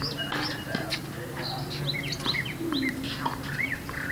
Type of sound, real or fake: real